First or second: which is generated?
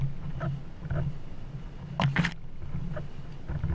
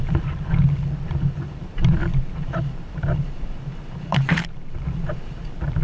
second